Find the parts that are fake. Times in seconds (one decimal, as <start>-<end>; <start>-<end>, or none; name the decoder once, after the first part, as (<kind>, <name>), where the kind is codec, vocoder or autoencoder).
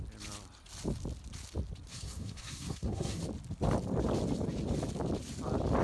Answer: 1.9-3.2 (codec, SNAC)